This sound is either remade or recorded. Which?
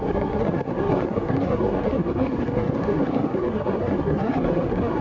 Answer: remade